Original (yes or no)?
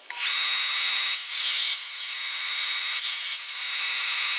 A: no